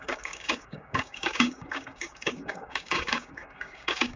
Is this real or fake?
fake